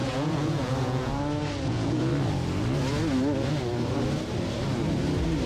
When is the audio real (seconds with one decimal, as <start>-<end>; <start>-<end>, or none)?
1.1-1.7; 2.1-5.5